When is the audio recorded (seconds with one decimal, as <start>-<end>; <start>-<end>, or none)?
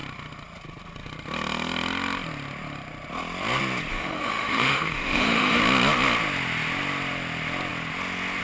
0.0-3.9; 5.6-8.4